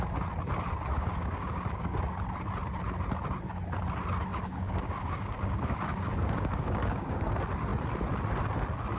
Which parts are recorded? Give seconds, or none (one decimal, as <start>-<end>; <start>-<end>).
0.0-0.9; 2.0-4.3; 7.3-9.0